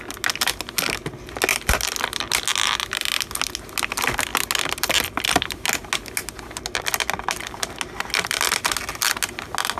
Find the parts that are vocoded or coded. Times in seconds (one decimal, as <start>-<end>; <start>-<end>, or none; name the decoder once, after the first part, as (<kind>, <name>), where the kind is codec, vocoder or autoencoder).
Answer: none